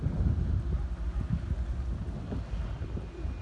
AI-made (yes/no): no